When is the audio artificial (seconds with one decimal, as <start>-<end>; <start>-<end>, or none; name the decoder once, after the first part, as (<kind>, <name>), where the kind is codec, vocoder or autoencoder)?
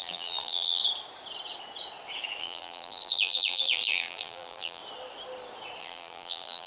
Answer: 0.0-0.8 (vocoder, BigVGAN v2); 2.4-4.8; 5.8-6.7